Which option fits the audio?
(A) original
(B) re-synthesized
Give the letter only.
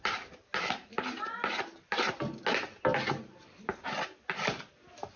A